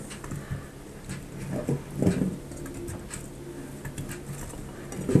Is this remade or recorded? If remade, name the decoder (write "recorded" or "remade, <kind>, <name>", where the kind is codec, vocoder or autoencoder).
recorded